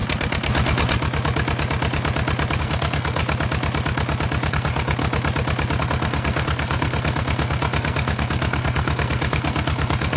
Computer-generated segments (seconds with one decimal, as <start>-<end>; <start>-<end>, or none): 2.6-3.2; 4.5-5.0; 5.8-10.2